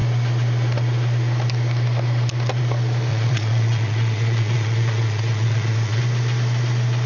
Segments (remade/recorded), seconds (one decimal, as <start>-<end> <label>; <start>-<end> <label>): 0.0-3.1 recorded; 3.1-6.0 remade; 6.0-7.1 recorded